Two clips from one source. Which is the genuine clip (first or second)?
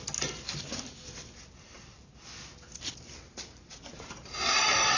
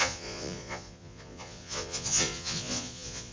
first